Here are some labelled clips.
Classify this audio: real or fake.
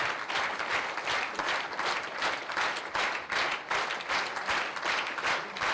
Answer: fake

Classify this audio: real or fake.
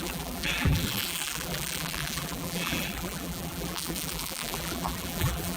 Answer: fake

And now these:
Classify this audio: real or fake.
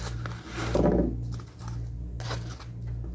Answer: real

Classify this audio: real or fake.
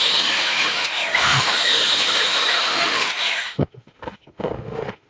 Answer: fake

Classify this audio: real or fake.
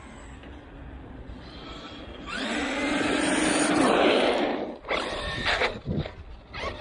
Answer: real